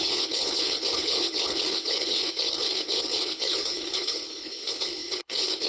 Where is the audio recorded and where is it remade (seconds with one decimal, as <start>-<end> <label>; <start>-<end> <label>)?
0.0-5.7 remade